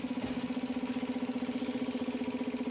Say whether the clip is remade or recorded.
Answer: recorded